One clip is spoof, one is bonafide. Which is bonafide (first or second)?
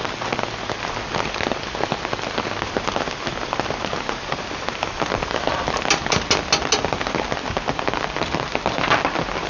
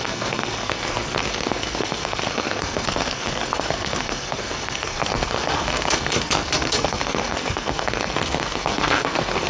first